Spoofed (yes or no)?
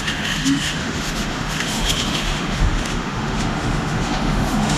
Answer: yes